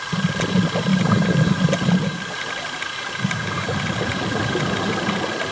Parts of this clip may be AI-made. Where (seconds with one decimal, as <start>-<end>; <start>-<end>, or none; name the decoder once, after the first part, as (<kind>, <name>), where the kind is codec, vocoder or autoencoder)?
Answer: none